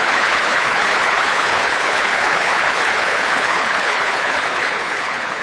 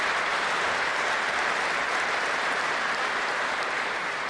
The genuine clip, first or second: second